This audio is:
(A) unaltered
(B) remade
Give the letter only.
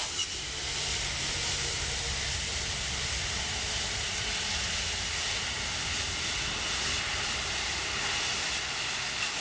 A